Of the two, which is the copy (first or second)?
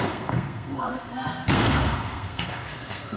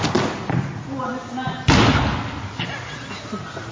first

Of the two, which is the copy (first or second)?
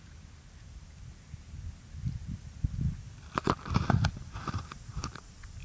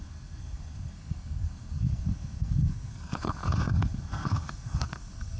second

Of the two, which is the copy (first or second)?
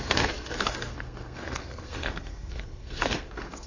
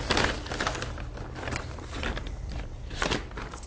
first